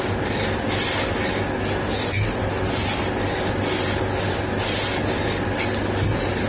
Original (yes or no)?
yes